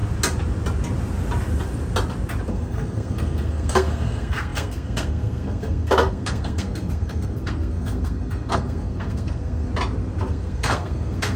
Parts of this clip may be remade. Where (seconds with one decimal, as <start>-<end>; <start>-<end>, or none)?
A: 2.5-9.7; 10.3-11.4